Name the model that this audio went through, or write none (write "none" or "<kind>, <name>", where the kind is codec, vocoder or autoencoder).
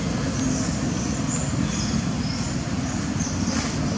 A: none